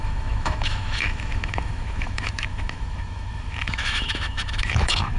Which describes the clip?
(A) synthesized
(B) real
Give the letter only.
A